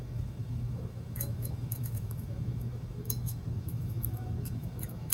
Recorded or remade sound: remade